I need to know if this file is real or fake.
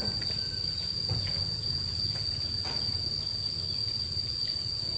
real